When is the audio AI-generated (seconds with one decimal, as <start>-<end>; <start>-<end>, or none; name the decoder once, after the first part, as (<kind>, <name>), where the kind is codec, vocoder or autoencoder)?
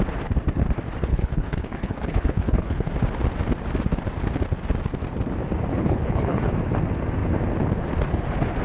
1.1-2.9 (codec, HILCodec); 5.7-6.5